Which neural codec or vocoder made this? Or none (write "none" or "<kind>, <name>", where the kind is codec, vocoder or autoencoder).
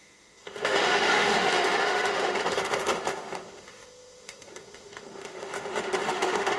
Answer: autoencoder, DAC-VAE